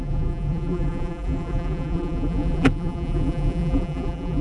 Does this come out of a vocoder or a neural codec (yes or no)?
yes